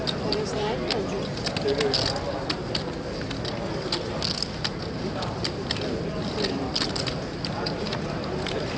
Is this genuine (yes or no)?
yes